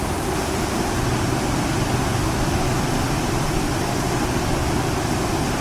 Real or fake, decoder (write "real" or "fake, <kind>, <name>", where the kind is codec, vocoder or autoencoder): real